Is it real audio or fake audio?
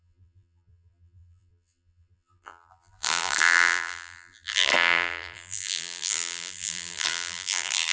fake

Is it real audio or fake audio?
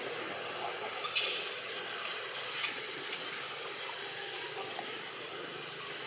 real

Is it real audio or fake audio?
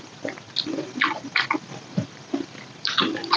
real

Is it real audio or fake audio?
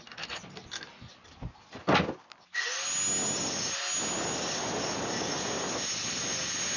real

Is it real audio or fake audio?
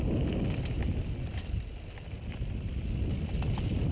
real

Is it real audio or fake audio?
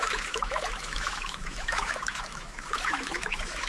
fake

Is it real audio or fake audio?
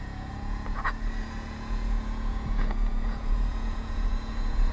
fake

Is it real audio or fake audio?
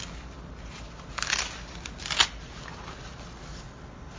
real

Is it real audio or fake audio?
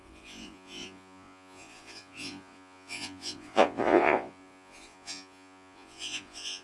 fake